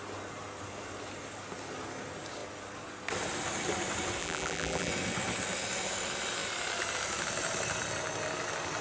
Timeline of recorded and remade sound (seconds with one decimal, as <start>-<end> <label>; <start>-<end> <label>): 0.0-4.2 recorded; 4.2-4.9 remade; 4.9-8.8 recorded